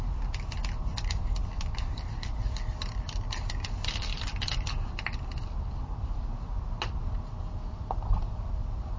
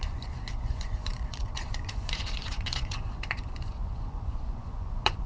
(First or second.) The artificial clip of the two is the second